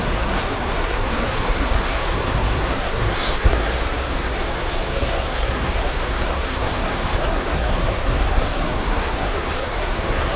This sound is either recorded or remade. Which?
remade